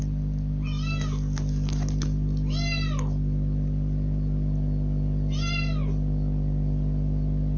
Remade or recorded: recorded